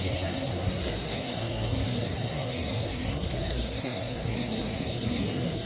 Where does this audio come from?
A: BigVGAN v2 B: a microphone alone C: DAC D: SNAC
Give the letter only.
D